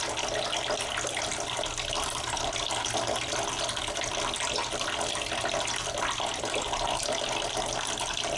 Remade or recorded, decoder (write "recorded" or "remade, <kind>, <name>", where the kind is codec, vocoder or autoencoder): recorded